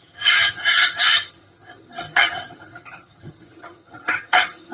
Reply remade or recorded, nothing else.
remade